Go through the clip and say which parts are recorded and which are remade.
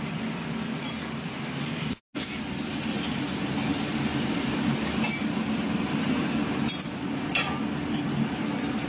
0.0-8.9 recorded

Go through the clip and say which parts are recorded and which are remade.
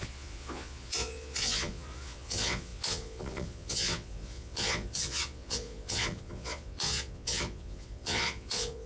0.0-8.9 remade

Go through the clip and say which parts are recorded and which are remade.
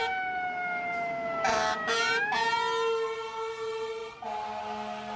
0.0-5.2 recorded